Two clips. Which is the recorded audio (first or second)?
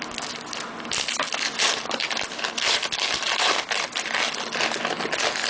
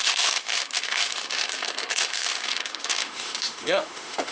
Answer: first